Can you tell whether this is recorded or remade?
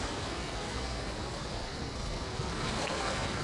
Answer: remade